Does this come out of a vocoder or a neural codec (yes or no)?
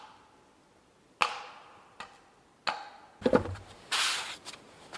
no